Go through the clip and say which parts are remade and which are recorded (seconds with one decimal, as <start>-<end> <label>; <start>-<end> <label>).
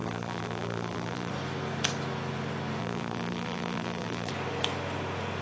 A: 0.0-1.3 remade; 1.3-2.8 recorded; 2.8-4.3 remade; 4.3-5.4 recorded